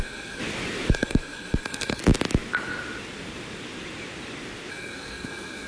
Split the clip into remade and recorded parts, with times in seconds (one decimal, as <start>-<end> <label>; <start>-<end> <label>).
0.0-0.4 remade; 0.4-0.9 recorded; 0.9-2.0 remade; 2.0-4.7 recorded; 4.7-5.7 remade